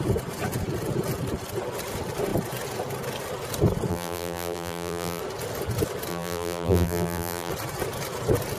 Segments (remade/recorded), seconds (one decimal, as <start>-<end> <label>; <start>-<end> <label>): 0.0-3.9 recorded; 3.9-5.2 remade; 5.2-6.1 recorded; 6.1-7.5 remade; 7.5-8.6 recorded